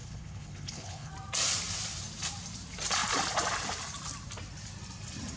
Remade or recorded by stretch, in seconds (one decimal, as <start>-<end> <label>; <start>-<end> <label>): 0.0-1.1 remade; 1.1-5.4 recorded